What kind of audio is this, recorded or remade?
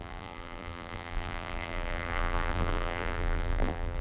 remade